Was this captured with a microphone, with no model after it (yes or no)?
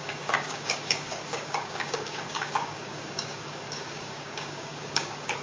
no